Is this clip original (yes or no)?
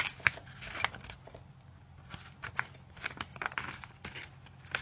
yes